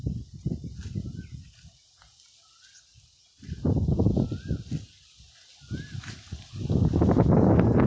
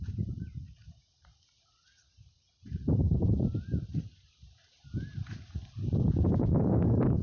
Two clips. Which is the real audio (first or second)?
first